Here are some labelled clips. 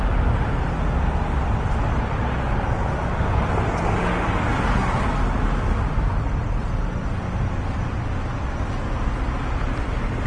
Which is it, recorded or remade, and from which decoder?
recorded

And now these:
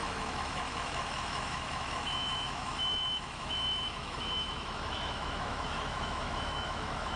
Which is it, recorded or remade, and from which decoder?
remade, autoencoder, DAC-VAE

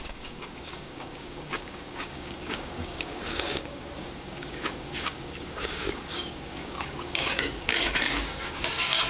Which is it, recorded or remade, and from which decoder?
remade, codec, DAC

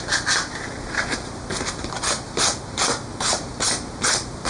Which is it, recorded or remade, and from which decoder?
remade, vocoder, BigVGAN v2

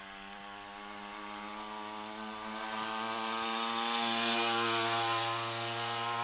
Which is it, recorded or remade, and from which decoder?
recorded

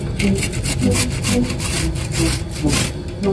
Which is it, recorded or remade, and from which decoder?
recorded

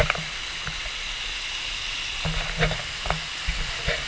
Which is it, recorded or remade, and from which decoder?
recorded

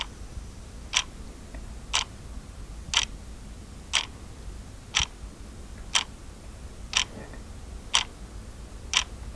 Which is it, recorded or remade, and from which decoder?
recorded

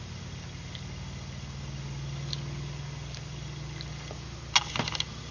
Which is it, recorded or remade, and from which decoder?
recorded